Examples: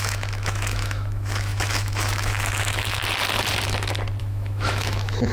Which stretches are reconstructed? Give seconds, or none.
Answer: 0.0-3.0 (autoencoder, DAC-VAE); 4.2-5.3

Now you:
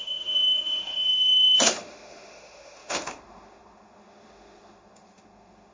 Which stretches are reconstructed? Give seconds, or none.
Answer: 0.0-5.7 (autoencoder, DAC-VAE)

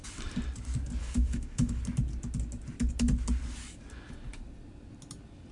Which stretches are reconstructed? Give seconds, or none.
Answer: 1.0-1.8 (autoencoder, DAC-VAE)